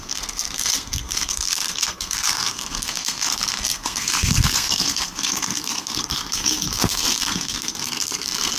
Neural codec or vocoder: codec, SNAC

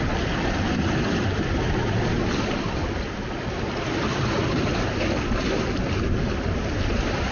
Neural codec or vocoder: none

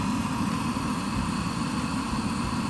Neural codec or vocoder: none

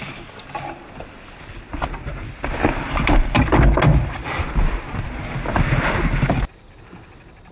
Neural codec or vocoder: none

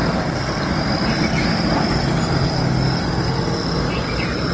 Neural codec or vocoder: none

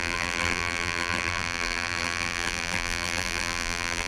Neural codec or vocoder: vocoder, BigVGAN v2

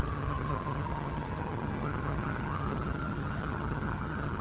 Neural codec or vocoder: vocoder, HiFi-GAN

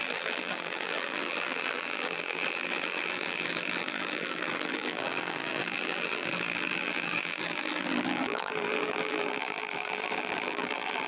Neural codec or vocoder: vocoder, BigVGAN v2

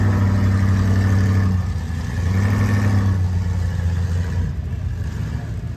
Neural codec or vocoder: none